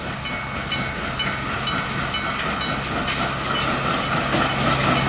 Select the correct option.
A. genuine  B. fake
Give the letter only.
A